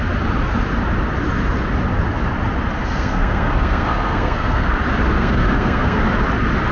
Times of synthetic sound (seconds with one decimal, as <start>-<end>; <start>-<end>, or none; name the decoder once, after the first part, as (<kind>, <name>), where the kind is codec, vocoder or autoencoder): 2.8-4.8 (codec, SNAC); 5.2-6.0